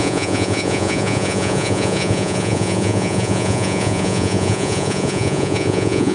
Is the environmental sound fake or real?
fake